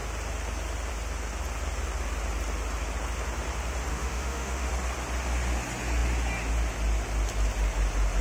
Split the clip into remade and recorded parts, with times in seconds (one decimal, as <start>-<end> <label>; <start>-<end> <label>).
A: 0.0-3.9 recorded; 3.9-4.7 remade; 4.7-8.2 recorded